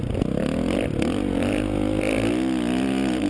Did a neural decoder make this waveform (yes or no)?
no